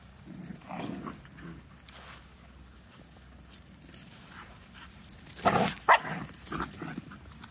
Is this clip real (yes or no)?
yes